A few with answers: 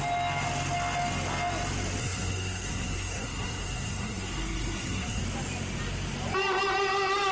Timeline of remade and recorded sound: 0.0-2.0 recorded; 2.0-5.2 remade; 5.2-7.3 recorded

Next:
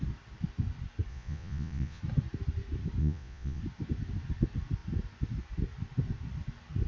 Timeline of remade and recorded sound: 0.0-1.1 recorded; 1.1-2.0 remade; 2.0-3.0 recorded; 3.0-3.6 remade; 3.6-6.9 recorded

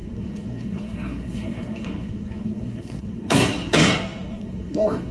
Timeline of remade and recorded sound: 0.0-5.1 remade

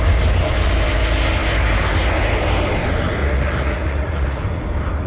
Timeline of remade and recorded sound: 0.0-3.2 recorded; 3.2-4.4 remade; 4.4-5.1 recorded